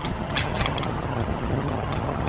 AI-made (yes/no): yes